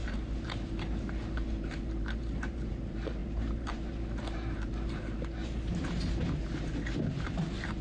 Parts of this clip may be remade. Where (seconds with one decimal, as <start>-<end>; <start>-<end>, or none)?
0.0-7.8